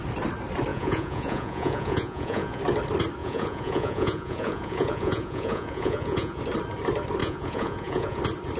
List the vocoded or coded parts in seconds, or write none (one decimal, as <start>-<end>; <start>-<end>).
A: 0.7-2.6; 3.2-6.4; 7.2-8.2